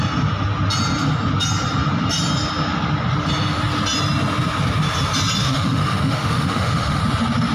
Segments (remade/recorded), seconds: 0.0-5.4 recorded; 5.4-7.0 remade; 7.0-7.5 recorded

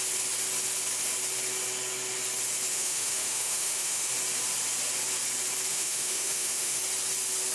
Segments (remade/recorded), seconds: 0.0-2.7 recorded; 2.7-4.1 remade; 4.1-5.7 recorded; 5.7-6.8 remade; 6.8-7.5 recorded

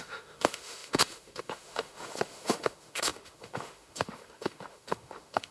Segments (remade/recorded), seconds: 0.0-5.5 remade

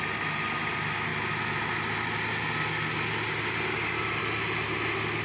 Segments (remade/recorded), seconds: 0.0-5.2 recorded

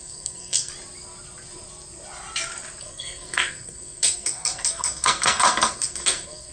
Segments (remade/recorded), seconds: 0.0-0.7 remade; 0.7-2.8 recorded; 2.8-6.5 remade

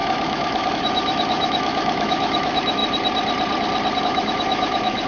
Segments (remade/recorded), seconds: 0.0-2.8 remade; 2.8-4.0 recorded; 4.0-5.1 remade